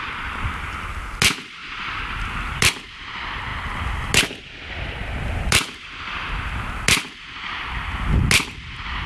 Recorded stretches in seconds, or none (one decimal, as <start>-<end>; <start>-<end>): 0.0-9.1